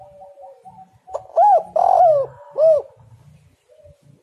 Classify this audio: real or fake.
real